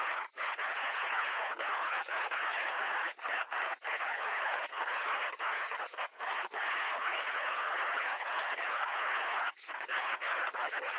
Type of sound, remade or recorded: remade